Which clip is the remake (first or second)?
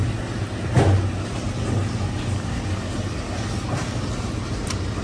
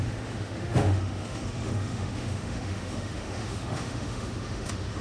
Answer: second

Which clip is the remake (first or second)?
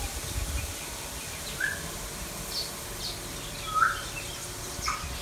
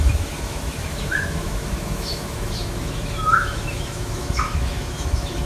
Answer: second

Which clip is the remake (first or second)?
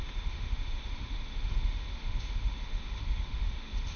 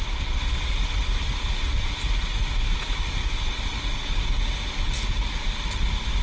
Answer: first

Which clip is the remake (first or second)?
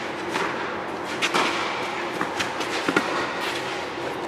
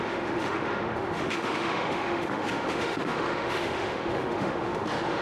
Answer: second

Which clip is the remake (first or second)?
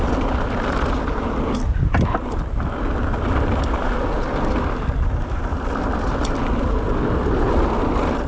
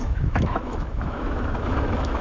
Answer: second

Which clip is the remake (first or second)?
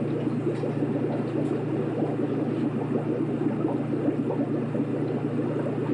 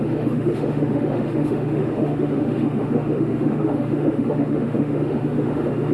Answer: second